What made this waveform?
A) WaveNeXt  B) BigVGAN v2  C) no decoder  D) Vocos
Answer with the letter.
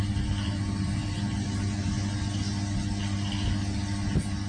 C